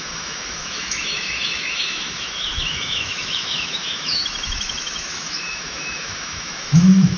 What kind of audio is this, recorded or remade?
remade